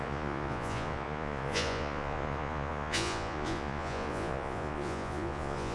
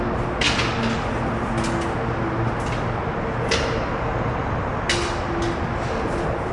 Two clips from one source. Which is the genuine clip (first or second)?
second